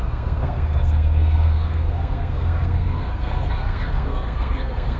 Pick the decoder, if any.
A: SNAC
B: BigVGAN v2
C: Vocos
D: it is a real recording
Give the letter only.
A